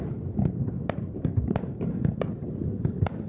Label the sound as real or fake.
real